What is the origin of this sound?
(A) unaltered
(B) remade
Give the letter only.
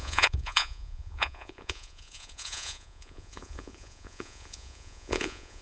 B